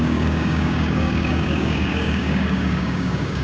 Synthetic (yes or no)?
yes